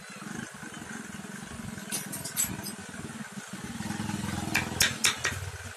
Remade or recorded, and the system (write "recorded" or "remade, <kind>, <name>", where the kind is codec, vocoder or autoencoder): recorded